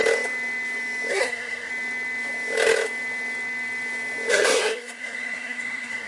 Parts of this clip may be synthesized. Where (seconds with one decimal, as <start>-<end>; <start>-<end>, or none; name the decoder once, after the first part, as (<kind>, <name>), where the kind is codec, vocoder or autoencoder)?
1.1-1.7 (codec, SNAC); 4.3-6.1